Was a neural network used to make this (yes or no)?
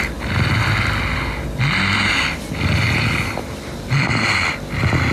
no